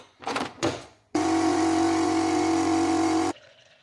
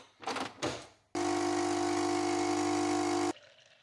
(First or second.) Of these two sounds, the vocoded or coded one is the first